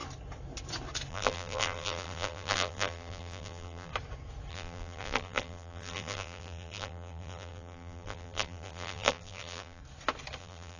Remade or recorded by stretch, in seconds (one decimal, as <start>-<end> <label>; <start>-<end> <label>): 0.0-1.1 recorded; 1.1-3.9 remade; 3.9-4.5 recorded; 4.5-9.8 remade; 9.8-10.4 recorded; 10.4-10.8 remade